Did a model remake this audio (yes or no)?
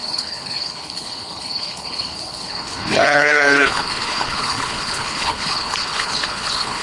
yes